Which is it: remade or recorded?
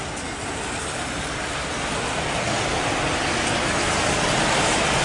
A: recorded